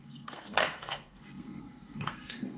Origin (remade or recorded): remade